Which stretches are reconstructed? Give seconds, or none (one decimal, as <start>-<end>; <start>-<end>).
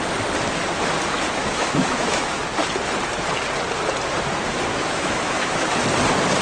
1.4-2.4; 4.7-5.7